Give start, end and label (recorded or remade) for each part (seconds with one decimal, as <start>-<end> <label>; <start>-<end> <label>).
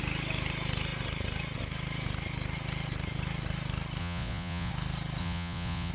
0.0-4.0 recorded; 4.0-4.7 remade; 4.7-5.2 recorded; 5.2-5.9 remade